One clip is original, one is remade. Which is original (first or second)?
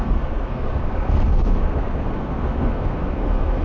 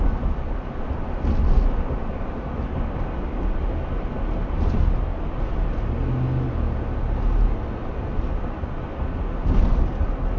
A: second